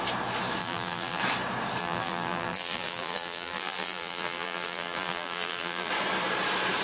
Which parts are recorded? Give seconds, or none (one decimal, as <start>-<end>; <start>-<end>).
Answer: 0.0-0.6; 1.2-1.8; 5.9-6.8